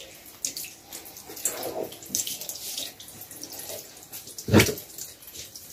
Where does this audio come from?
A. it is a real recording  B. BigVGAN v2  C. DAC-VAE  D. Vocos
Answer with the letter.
A